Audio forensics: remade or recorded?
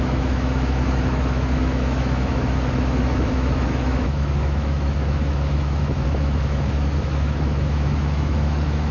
remade